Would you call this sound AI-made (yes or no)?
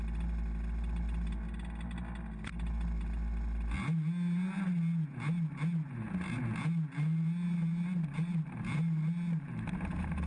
no